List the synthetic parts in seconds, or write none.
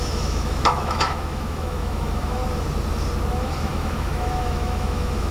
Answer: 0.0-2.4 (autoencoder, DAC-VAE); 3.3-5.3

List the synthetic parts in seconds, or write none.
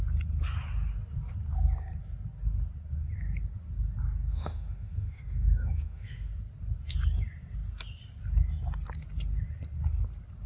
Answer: 4.3-6.3 (autoencoder, DAC-VAE)